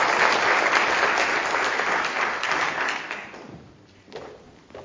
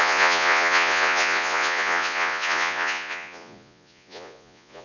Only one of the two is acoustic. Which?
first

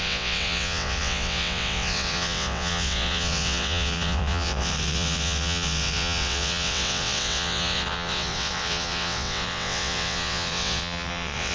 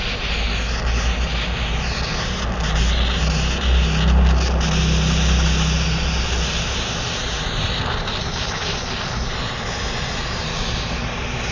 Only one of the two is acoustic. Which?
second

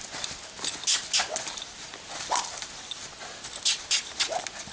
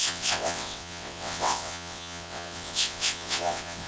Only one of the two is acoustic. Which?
first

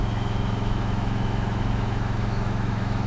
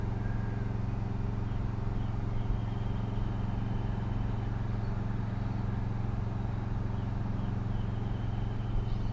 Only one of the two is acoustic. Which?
second